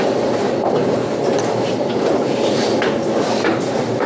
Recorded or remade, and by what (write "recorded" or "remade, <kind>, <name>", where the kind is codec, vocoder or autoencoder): recorded